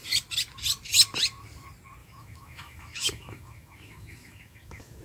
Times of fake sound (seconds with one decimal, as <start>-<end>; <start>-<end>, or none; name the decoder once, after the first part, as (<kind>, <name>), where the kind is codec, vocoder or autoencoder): 2.0-5.0 (autoencoder, DAC-VAE)